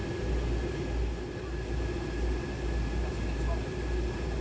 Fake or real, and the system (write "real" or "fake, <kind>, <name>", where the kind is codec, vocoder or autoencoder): real